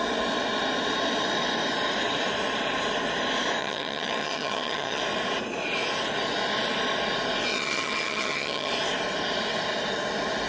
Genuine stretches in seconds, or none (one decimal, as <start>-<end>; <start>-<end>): 0.0-3.6; 5.0-7.5; 8.7-10.5